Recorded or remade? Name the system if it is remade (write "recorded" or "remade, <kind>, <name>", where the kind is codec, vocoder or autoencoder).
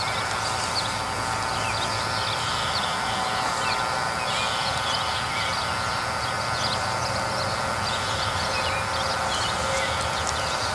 recorded